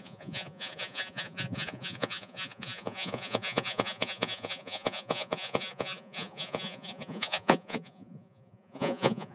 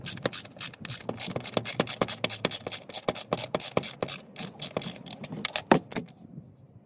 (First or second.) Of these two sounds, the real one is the second